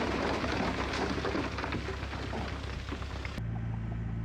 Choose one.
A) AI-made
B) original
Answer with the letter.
B